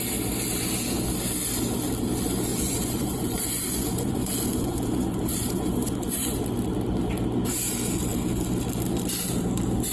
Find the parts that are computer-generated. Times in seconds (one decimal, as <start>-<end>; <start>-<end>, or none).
2.5-6.4